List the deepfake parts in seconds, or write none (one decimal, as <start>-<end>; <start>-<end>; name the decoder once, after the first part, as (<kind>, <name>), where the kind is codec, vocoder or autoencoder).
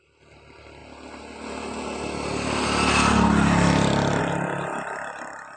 none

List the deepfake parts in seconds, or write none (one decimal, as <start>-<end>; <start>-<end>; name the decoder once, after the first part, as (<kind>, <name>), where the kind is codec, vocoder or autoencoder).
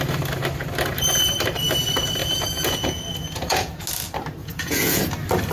2.2-3.8 (vocoder, Vocos); 4.4-5.0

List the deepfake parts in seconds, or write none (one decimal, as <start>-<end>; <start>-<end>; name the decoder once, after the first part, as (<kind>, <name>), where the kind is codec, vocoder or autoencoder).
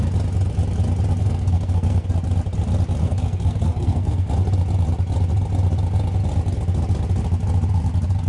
1.2-2.1 (codec, SNAC); 3.0-4.3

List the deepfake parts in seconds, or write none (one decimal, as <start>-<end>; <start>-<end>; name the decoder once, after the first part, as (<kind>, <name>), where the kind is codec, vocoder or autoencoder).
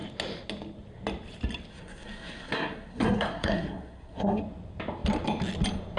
1.7-4.4 (codec, SNAC)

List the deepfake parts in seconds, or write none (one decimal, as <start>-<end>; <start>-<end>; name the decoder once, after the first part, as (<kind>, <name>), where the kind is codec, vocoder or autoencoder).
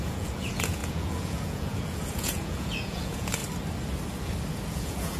0.0-3.4 (vocoder, Vocos); 4.7-5.2